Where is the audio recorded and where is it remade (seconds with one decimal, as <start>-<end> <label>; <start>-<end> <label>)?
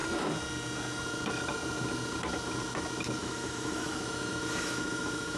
0.0-3.2 recorded; 3.2-5.4 remade